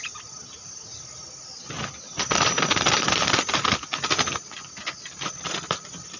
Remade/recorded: remade